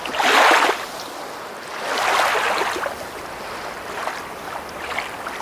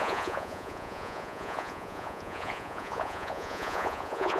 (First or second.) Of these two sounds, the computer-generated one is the second